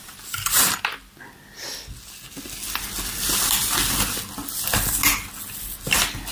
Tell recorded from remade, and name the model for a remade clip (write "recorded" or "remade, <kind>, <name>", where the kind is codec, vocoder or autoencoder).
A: recorded